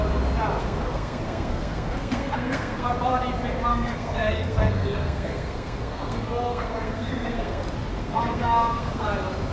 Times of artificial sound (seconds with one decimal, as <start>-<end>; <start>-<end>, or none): 0.6-2.9; 3.7-7.6; 8.0-9.1